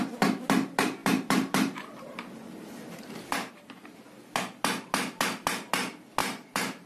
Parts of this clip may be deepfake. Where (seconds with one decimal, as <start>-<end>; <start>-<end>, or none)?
1.0-3.5; 6.2-6.9